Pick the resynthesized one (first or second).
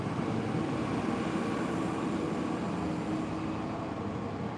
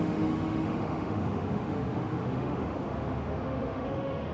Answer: second